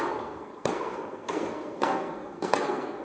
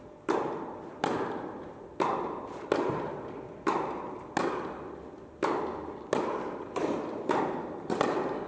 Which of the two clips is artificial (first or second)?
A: first